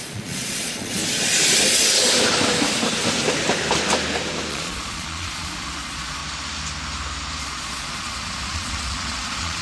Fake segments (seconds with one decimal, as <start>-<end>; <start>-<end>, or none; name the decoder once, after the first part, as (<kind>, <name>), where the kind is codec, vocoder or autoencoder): 0.0-1.0 (vocoder, Vocos); 4.5-6.2; 7.4-9.6